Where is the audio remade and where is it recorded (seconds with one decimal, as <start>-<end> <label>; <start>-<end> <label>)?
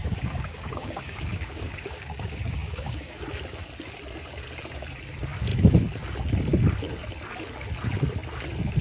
0.0-3.2 remade; 3.2-8.8 recorded